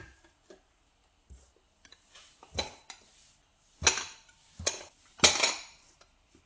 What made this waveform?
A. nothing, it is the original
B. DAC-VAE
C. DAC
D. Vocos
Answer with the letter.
A